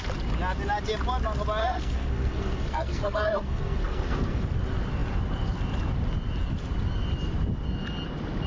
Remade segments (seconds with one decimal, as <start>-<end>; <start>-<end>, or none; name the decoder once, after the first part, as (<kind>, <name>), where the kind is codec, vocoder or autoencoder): 1.6-4.4 (codec, SNAC)

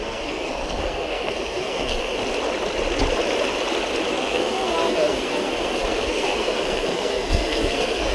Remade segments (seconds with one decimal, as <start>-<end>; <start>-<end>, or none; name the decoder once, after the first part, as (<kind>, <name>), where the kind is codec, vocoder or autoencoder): 0.0-2.2 (codec, SNAC); 4.1-8.1

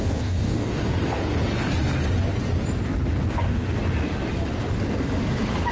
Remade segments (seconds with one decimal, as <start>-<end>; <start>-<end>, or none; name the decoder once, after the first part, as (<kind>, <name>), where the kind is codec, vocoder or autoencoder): 0.0-1.2 (codec, DAC); 3.3-3.8

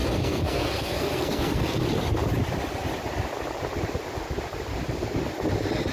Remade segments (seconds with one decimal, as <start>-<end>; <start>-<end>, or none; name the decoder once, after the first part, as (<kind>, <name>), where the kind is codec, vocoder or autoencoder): 0.0-1.8 (codec, SNAC)